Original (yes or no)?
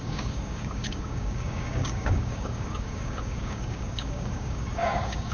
no